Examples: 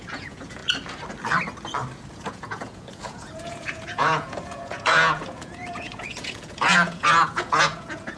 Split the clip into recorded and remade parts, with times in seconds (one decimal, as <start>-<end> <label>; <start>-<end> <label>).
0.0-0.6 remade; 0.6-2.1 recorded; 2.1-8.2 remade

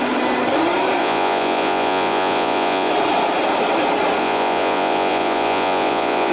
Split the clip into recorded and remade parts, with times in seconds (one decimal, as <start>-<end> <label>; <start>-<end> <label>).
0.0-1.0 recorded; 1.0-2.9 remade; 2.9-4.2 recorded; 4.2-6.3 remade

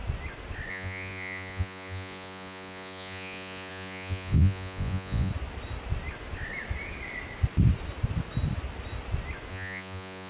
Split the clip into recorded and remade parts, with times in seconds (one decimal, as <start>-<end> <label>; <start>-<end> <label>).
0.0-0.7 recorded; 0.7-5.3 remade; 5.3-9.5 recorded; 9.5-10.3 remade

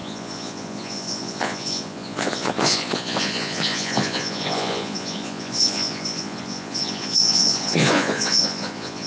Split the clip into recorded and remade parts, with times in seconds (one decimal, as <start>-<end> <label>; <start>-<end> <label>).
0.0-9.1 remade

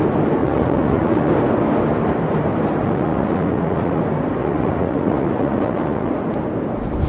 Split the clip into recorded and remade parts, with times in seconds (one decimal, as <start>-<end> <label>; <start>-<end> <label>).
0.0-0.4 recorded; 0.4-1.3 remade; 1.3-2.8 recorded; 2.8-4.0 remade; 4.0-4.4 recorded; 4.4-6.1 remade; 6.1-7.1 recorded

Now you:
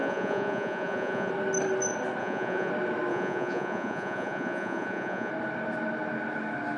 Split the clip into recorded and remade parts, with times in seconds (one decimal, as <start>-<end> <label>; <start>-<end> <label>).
0.0-1.3 remade; 1.3-2.2 recorded; 2.2-2.7 remade; 2.7-3.1 recorded; 3.1-5.3 remade; 5.3-6.8 recorded